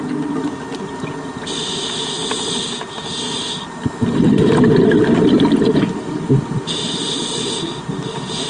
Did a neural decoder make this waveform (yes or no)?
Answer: no